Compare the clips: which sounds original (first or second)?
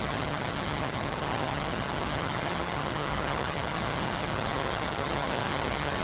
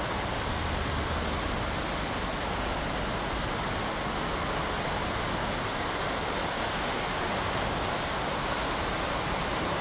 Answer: second